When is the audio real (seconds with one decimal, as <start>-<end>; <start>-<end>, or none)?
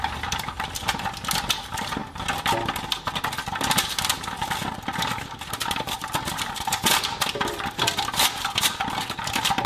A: 0.0-4.4; 8.5-9.7